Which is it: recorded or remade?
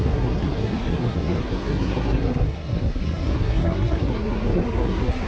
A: remade